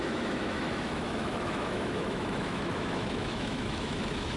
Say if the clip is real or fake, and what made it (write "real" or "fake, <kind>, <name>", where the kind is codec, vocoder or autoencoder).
fake, autoencoder, DAC-VAE